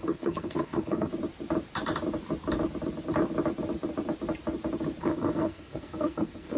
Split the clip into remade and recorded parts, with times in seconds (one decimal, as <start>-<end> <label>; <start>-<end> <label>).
0.0-1.1 remade; 1.1-5.0 recorded; 5.0-6.6 remade